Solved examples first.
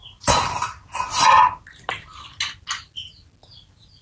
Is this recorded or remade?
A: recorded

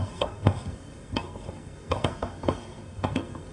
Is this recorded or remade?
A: remade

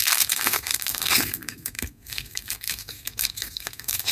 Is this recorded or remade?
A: remade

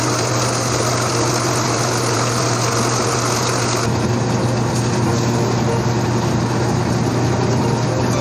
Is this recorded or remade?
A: recorded